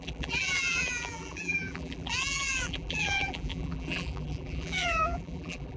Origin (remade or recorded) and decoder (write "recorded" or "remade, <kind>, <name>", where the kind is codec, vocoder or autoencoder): remade, vocoder, BigVGAN v2